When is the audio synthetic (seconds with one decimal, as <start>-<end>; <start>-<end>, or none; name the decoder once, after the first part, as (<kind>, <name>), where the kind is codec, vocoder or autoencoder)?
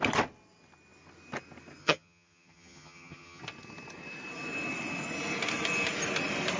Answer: 1.8-3.4 (vocoder, HiFi-GAN)